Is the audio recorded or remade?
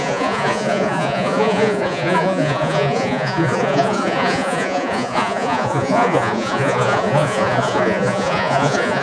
remade